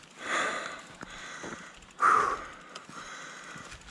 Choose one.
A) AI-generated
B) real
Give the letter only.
B